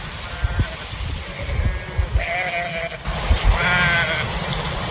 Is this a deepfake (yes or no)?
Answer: no